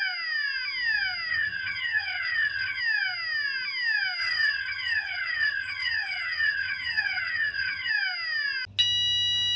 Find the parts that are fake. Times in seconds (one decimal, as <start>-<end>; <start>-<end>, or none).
1.3-2.8; 4.2-7.9